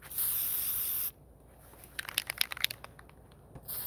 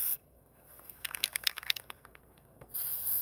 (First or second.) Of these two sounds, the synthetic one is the second